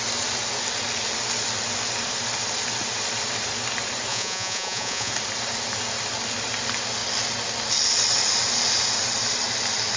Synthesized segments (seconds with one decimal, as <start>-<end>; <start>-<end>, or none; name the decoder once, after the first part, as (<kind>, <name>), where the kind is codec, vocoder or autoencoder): 4.1-5.1 (vocoder, Vocos)